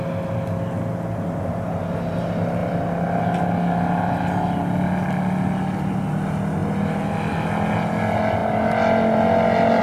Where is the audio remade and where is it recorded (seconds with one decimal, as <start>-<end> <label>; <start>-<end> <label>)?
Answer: 0.0-9.8 recorded